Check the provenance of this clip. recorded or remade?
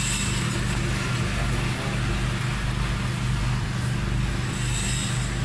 recorded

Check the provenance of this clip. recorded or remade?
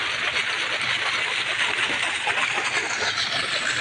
recorded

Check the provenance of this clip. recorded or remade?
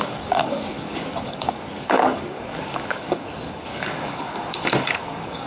remade